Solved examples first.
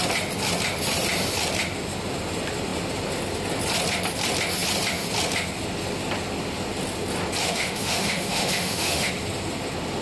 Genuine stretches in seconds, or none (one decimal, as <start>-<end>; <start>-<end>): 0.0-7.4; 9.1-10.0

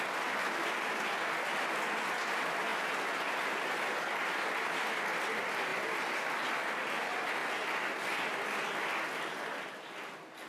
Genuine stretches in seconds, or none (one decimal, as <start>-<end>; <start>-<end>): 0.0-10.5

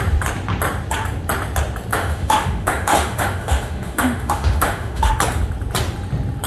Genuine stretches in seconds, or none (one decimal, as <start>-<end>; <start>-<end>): 0.0-1.9; 5.1-6.5